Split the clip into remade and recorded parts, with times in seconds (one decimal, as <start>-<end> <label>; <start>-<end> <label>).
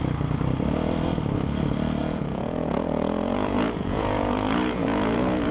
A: 0.0-2.0 recorded; 2.0-5.5 remade